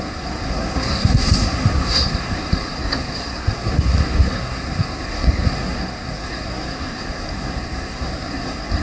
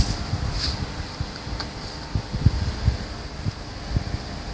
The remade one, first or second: first